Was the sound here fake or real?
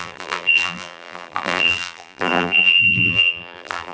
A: fake